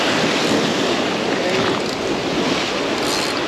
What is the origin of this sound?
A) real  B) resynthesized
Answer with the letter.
A